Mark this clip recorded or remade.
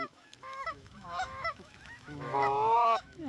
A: remade